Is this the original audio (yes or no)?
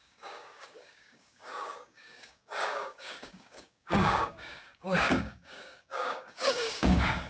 no